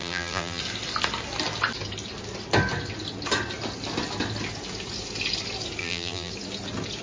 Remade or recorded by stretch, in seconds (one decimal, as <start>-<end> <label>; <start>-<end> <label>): 0.0-0.6 remade; 0.6-5.8 recorded; 5.8-6.3 remade; 6.3-7.0 recorded

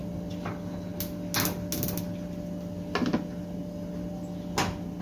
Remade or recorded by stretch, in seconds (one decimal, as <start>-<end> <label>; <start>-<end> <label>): 0.0-5.0 recorded

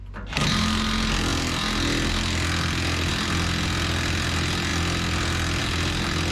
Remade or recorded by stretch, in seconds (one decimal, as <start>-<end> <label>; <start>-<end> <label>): 0.0-6.3 recorded